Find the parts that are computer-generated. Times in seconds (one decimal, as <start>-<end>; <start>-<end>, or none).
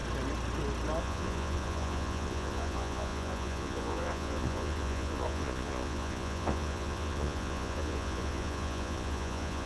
1.0-9.7